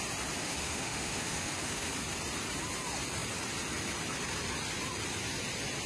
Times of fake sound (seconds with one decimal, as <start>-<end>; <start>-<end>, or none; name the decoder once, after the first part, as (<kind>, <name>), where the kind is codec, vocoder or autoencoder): 0.4-1.9 (autoencoder, DAC-VAE)